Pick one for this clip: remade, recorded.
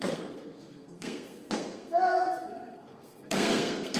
remade